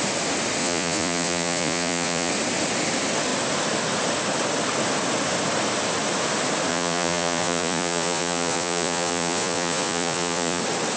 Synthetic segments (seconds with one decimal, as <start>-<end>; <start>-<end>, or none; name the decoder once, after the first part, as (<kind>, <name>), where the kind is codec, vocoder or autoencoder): 0.6-2.3 (vocoder, Vocos); 6.7-10.6